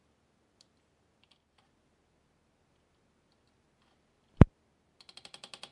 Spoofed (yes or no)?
no